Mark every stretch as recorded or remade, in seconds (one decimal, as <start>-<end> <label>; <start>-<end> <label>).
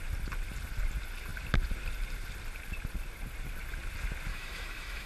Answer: 0.0-4.3 recorded; 4.3-5.1 remade